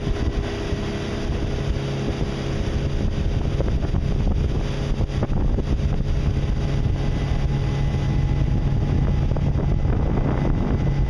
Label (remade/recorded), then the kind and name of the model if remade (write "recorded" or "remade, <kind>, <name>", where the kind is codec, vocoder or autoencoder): recorded